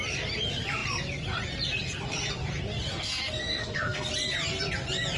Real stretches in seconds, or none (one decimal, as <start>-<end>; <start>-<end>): 0.0-2.9; 4.1-5.2